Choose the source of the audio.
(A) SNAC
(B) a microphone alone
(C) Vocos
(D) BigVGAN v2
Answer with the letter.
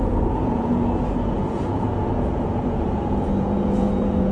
C